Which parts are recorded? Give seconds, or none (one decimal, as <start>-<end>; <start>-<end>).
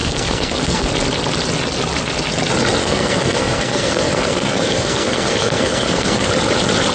0.9-2.8; 6.3-6.9